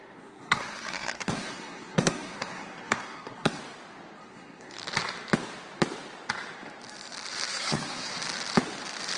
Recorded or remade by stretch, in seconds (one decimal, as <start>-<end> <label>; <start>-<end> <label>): 0.0-3.6 remade; 3.6-4.2 recorded; 4.2-4.8 remade; 4.8-7.5 recorded; 7.5-8.1 remade; 8.1-9.2 recorded